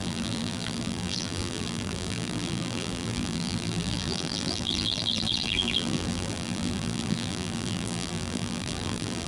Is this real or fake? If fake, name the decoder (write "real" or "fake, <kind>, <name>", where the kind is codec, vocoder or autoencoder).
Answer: fake, vocoder, BigVGAN v2